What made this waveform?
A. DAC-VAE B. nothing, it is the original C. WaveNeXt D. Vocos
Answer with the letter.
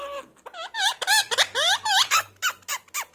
B